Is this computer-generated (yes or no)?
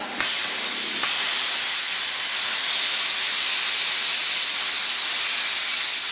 no